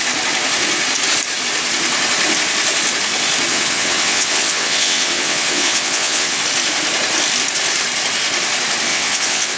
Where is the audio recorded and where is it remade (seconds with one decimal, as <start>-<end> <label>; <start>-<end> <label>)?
0.0-3.5 recorded; 3.5-6.4 remade; 6.4-8.9 recorded; 8.9-9.6 remade